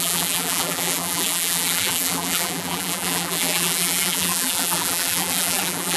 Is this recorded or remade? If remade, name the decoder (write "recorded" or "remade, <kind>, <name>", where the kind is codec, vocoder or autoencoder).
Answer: remade, vocoder, BigVGAN v2